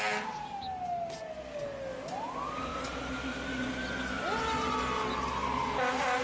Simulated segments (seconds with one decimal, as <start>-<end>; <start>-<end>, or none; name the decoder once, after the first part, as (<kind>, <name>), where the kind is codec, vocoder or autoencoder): none